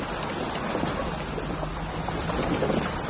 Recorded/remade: recorded